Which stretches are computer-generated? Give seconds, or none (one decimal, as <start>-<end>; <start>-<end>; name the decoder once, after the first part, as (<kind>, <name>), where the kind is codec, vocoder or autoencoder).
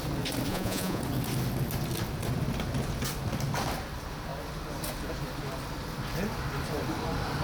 0.5-1.0 (vocoder, Vocos)